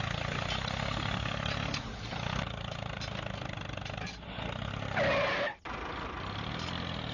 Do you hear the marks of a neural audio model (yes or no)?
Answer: no